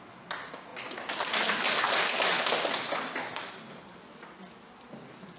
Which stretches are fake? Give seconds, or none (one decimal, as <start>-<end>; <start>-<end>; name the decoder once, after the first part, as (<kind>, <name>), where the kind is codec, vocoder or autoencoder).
none